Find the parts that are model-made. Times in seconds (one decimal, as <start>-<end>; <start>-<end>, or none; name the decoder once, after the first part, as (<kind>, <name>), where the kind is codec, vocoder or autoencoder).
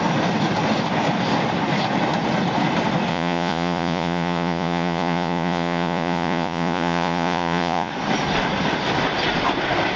3.1-7.9 (vocoder, Vocos)